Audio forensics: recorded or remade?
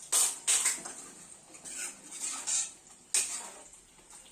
recorded